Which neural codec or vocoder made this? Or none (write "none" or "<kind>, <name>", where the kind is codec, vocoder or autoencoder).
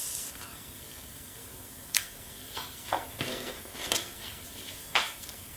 codec, SNAC